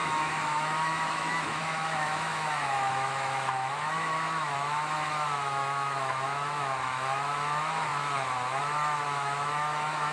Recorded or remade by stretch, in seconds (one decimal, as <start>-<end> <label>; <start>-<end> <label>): 0.0-10.1 remade

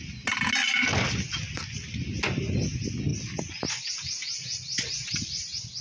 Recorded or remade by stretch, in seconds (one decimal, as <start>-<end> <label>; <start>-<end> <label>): 0.0-5.8 recorded